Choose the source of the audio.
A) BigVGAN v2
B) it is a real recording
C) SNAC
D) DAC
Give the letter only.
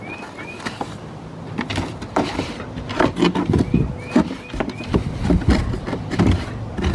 B